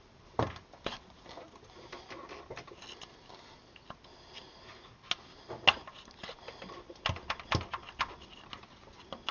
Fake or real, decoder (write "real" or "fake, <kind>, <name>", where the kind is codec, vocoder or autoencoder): real